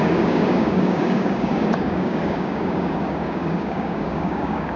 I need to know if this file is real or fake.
fake